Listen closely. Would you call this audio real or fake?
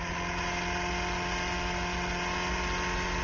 real